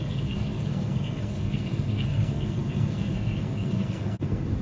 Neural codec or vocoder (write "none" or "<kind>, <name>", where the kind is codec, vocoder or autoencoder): codec, SNAC